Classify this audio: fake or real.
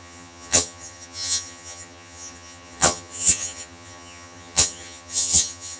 fake